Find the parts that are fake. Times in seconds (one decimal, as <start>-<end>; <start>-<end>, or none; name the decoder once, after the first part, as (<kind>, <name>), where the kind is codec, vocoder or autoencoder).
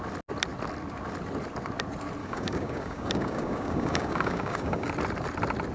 2.2-4.9 (codec, DAC)